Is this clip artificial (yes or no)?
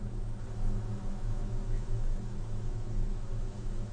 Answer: yes